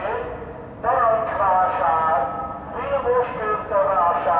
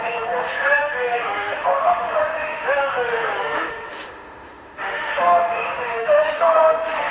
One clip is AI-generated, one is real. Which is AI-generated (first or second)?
second